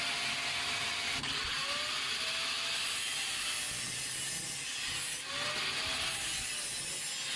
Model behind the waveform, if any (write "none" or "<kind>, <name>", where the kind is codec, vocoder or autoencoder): none